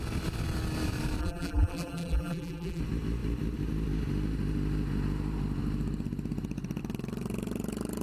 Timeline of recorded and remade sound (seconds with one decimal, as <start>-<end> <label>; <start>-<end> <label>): 0.0-1.2 recorded; 1.2-2.8 remade; 2.8-8.0 recorded

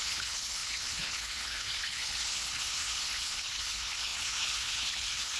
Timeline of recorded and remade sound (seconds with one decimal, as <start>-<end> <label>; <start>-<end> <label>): 0.0-5.4 remade